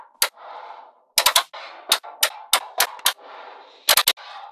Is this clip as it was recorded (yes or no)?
yes